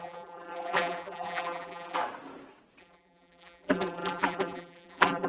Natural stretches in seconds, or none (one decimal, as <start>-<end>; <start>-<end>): 2.0-2.8